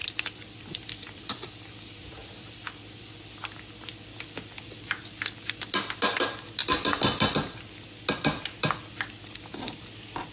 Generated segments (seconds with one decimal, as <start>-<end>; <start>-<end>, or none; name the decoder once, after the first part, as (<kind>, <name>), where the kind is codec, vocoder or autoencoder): 0.0-2.5 (vocoder, BigVGAN v2)